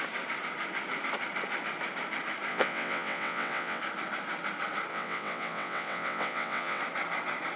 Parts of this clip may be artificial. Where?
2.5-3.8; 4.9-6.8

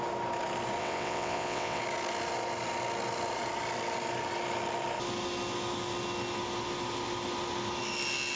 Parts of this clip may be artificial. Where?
0.8-1.8

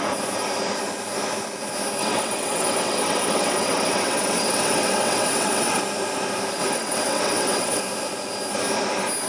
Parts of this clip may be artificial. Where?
2.0-5.8; 6.6-7.8

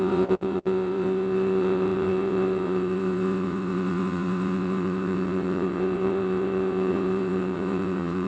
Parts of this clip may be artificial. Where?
0.0-8.3

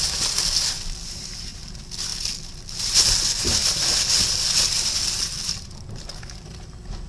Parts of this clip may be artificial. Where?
none

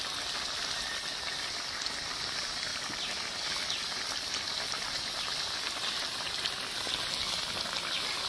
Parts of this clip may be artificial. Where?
none

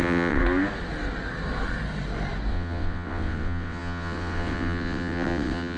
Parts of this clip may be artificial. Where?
0.0-0.4; 2.5-5.8